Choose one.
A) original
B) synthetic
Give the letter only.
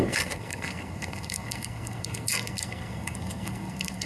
B